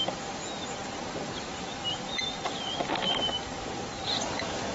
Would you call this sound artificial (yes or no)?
yes